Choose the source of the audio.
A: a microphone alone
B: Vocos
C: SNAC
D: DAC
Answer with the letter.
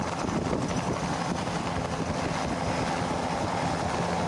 A